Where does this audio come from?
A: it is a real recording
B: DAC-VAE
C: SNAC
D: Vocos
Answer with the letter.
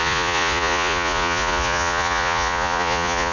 D